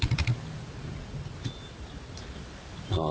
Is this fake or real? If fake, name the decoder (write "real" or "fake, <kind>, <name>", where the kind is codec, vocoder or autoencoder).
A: fake, vocoder, BigVGAN v2